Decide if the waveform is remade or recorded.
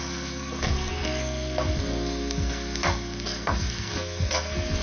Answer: remade